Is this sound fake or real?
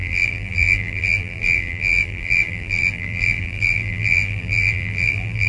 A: fake